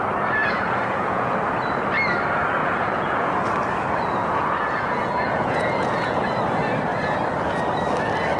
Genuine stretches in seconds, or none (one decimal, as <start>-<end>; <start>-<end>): 0.0-0.4; 1.3-2.6; 3.3-4.2; 6.4-8.4